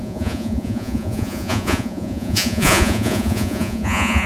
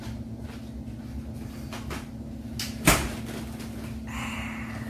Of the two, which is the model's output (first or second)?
first